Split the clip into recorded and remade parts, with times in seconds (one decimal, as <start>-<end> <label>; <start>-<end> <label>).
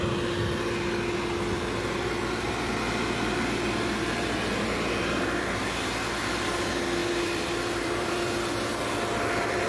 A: 0.0-7.0 recorded; 7.0-8.5 remade; 8.5-9.7 recorded